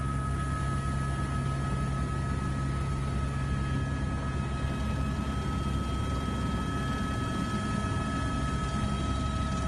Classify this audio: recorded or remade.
recorded